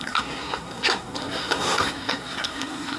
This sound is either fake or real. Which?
fake